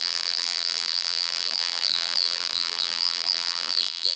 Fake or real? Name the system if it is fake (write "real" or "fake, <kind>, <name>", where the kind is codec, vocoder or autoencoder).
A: fake, vocoder, BigVGAN v2